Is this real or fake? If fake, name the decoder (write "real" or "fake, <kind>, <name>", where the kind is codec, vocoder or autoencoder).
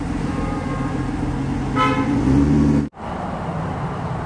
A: real